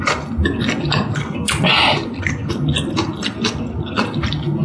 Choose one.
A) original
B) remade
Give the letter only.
A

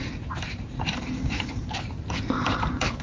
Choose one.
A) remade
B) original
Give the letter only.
A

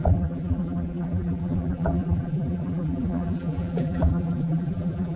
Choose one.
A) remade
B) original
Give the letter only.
A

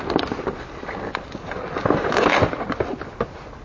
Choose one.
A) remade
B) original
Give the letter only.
B